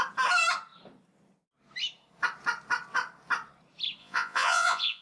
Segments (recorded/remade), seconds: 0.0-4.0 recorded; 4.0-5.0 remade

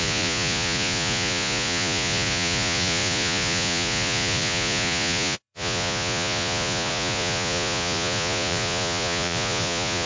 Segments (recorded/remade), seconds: 0.0-10.1 remade

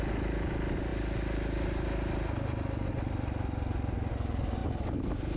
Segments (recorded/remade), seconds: 0.0-5.4 recorded

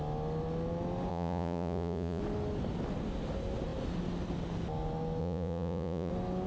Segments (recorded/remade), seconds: 0.0-1.1 recorded; 1.1-2.2 remade; 2.2-5.2 recorded; 5.2-6.1 remade; 6.1-6.5 recorded

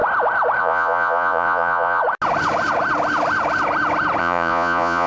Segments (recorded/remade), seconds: 0.0-0.6 recorded; 0.6-2.0 remade; 2.0-4.2 recorded; 4.2-5.1 remade

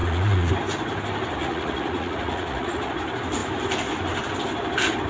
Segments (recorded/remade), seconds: 0.0-0.5 remade; 0.5-1.4 recorded; 1.4-2.9 remade; 2.9-5.1 recorded